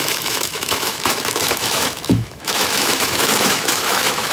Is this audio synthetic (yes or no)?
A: yes